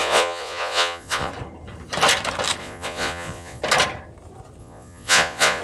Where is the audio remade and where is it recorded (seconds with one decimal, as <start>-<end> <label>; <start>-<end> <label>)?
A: 0.0-1.3 remade; 1.3-2.6 recorded; 2.6-3.6 remade; 3.6-4.6 recorded; 4.6-5.6 remade